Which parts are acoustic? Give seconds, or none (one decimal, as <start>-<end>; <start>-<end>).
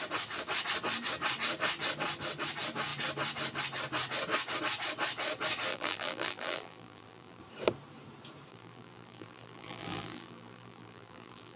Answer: 0.0-5.7; 7.4-8.5